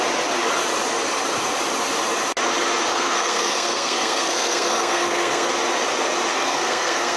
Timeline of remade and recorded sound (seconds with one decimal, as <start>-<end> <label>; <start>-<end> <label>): 0.0-2.9 recorded; 2.9-5.5 remade; 5.5-6.3 recorded; 6.3-7.2 remade